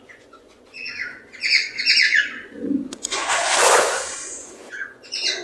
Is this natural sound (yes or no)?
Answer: no